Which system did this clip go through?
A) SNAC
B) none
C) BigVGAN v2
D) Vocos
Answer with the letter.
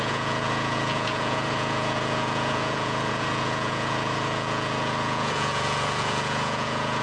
D